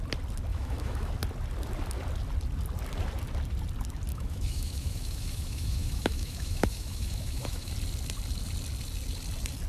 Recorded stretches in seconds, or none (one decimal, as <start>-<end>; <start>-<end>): 0.0-0.5; 1.1-4.1; 7.7-9.7